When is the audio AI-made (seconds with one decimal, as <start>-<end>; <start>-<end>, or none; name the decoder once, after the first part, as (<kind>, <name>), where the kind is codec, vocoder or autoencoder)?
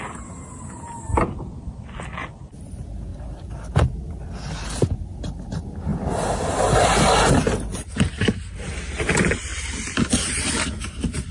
3.1-5.5 (vocoder, BigVGAN v2); 5.9-7.3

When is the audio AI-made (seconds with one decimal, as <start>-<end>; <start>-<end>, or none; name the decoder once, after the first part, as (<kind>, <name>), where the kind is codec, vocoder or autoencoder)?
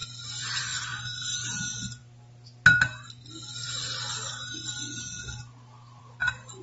none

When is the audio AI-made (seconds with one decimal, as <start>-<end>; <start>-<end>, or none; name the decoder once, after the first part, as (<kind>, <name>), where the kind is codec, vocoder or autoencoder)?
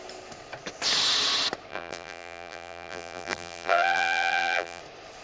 1.7-4.8 (vocoder, BigVGAN v2)